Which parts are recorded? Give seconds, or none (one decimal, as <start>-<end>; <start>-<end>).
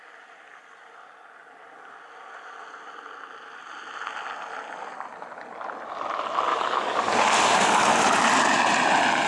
0.0-6.5; 7.1-9.3